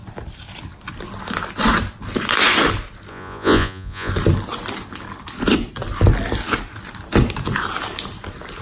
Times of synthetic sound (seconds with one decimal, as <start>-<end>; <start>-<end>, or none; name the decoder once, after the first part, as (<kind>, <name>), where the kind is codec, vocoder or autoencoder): 3.1-4.1 (vocoder, Vocos)